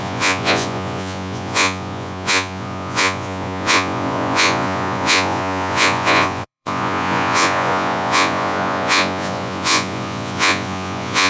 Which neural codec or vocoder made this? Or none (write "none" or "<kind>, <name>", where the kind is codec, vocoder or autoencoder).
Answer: vocoder, Vocos